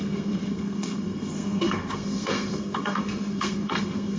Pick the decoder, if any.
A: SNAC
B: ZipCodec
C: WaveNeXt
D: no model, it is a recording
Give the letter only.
A